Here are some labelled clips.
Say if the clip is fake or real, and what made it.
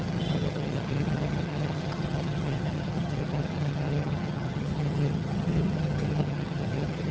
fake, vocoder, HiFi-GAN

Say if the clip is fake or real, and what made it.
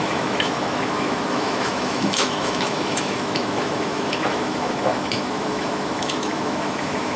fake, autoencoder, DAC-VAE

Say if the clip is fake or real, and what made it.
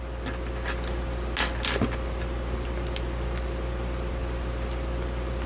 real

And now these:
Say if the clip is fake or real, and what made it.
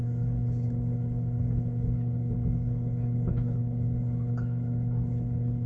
fake, codec, HILCodec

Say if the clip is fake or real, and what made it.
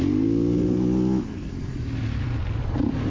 real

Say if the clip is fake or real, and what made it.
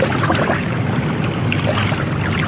real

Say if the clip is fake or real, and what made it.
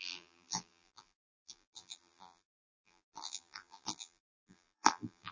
fake, vocoder, BigVGAN v2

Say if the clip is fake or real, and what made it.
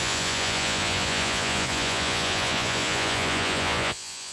fake, vocoder, Vocos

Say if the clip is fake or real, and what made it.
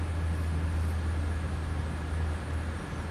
real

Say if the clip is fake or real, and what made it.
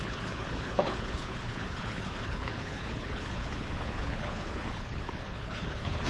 fake, codec, HILCodec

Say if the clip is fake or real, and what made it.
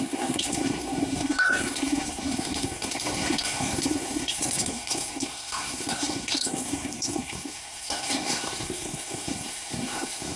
fake, codec, SNAC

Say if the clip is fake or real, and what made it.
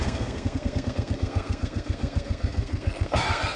fake, codec, SNAC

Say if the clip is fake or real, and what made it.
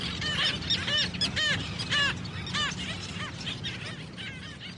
real